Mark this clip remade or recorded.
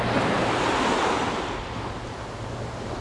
recorded